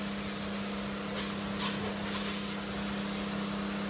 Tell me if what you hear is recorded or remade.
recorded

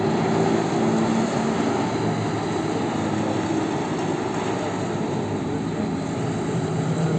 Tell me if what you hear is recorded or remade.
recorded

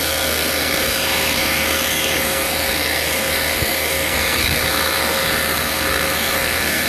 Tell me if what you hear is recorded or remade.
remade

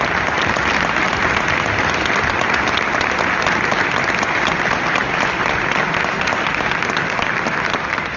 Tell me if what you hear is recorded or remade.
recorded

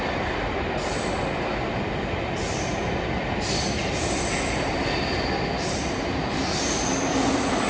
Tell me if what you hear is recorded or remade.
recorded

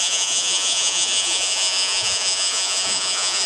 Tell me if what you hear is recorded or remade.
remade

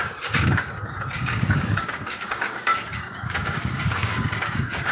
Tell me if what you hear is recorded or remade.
remade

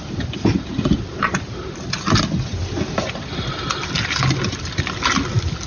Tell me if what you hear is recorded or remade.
recorded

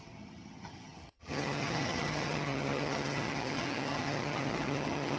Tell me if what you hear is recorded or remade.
remade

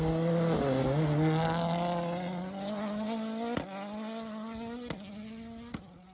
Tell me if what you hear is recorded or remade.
recorded